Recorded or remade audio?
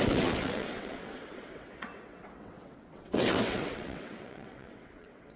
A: remade